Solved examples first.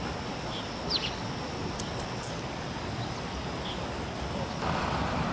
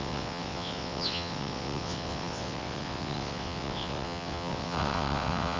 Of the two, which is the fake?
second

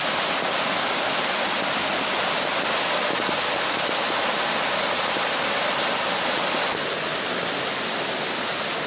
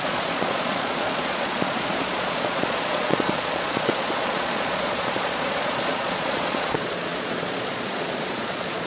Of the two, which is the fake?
second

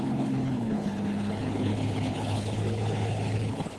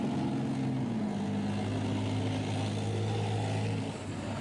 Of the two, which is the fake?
first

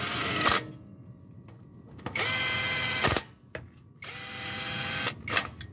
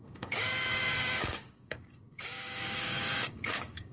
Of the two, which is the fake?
second